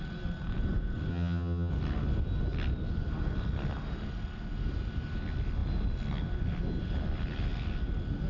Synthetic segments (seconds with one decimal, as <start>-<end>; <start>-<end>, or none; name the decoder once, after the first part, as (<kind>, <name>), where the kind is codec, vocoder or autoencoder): 1.1-1.7 (vocoder, HiFi-GAN)